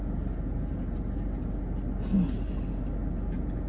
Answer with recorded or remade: recorded